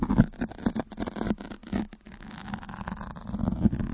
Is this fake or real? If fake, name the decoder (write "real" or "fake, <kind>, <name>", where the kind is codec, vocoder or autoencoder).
real